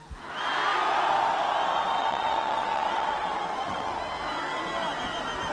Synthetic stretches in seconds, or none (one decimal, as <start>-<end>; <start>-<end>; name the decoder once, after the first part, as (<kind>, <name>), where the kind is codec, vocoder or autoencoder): 2.0-3.9 (vocoder, WaveNeXt)